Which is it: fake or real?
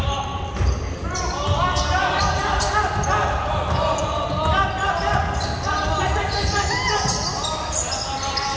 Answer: real